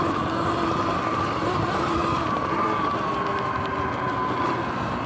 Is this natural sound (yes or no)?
yes